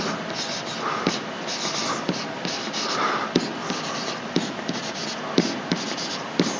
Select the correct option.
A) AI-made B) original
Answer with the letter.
B